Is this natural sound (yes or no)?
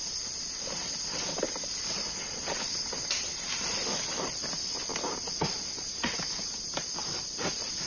yes